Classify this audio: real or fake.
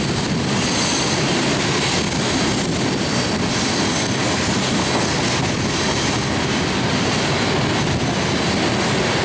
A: real